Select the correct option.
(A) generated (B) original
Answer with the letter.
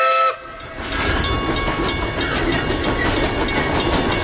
B